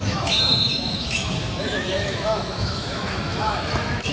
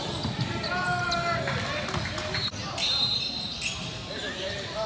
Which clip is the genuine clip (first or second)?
second